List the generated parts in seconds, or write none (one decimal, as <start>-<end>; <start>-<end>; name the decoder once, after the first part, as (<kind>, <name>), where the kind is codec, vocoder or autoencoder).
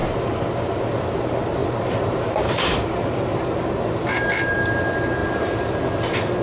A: 1.6-3.2 (vocoder, BigVGAN v2); 5.2-5.7